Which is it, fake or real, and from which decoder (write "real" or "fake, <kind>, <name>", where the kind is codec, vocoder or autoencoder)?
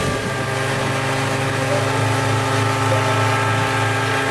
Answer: real